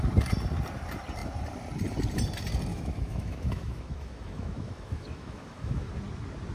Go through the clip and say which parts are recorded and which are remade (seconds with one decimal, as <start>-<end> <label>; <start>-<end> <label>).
0.0-2.7 recorded; 2.7-5.9 remade; 5.9-6.5 recorded